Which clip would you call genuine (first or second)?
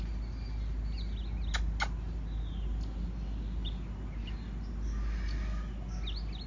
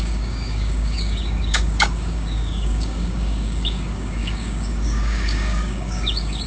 first